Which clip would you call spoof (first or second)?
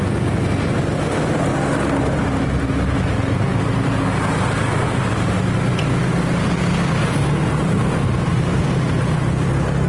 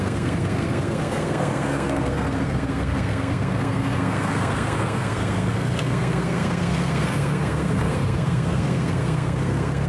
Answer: second